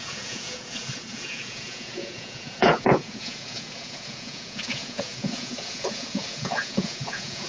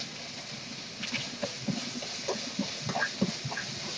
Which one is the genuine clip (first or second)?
second